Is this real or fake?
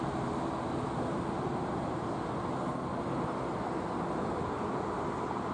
real